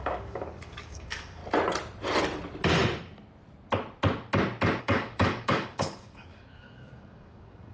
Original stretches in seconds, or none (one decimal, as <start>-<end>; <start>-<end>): 1.4-4.8